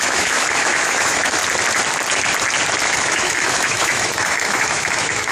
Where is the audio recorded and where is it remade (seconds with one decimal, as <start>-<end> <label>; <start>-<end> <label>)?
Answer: 0.0-1.4 remade; 1.4-2.9 recorded; 2.9-5.3 remade